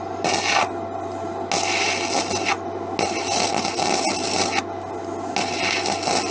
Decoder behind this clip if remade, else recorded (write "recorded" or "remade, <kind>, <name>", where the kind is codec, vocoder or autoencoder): recorded